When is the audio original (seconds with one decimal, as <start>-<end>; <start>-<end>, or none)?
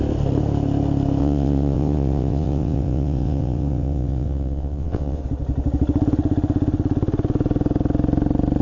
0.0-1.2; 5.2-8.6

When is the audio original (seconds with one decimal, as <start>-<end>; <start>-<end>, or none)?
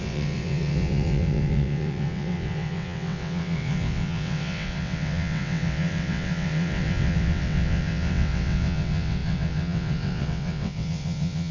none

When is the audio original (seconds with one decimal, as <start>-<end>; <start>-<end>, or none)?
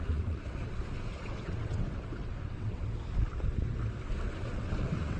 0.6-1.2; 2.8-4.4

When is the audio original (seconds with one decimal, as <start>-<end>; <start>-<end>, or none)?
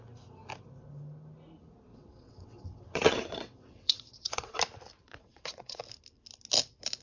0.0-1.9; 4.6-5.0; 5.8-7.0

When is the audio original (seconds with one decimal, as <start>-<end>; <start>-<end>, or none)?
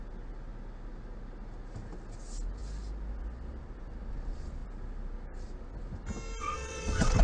0.0-6.4